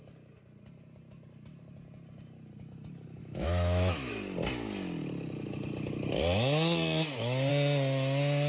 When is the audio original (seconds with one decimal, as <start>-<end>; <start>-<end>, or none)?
0.0-3.2; 4.1-8.5